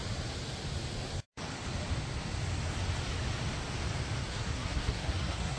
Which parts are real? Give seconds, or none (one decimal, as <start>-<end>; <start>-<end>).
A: 0.0-4.3